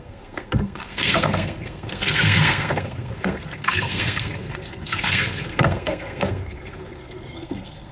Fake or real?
fake